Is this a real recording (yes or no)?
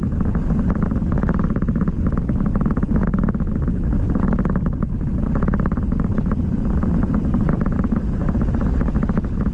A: yes